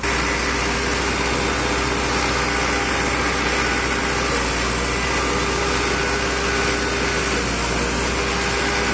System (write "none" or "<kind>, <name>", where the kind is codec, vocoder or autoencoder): none